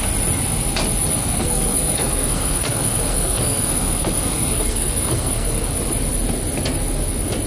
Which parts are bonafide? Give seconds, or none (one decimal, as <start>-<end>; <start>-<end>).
0.0-1.2; 5.7-7.5